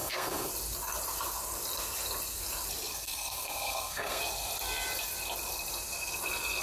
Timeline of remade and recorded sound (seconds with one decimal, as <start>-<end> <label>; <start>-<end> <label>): 0.0-0.5 remade; 0.5-2.9 recorded; 2.9-4.2 remade; 4.2-6.6 recorded